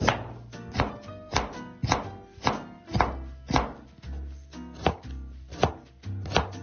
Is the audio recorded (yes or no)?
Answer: yes